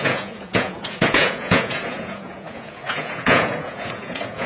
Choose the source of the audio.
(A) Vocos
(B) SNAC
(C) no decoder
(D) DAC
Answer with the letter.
A